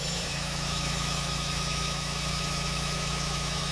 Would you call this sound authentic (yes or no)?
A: no